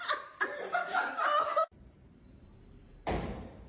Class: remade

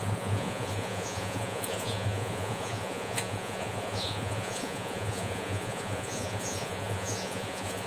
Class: remade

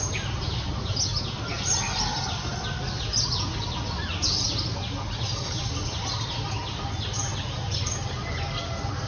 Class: recorded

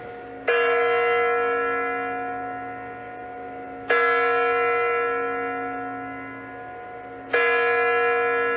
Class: recorded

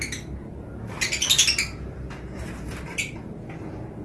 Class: recorded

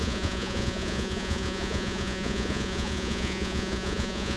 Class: remade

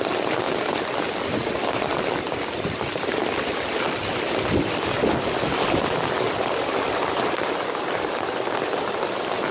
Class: recorded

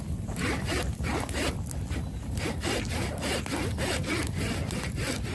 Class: recorded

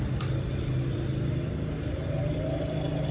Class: recorded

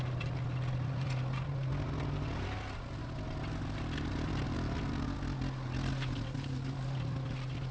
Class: recorded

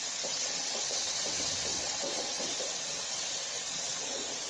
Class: remade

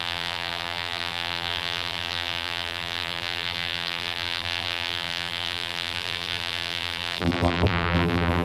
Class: remade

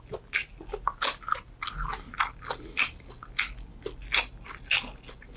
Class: recorded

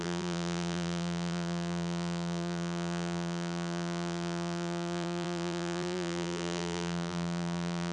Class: remade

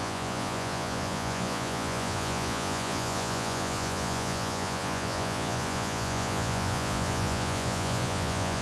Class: remade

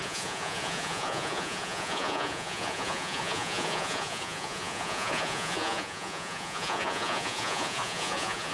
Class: remade